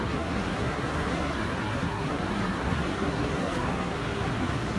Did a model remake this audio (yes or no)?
yes